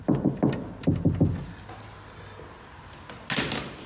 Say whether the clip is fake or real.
real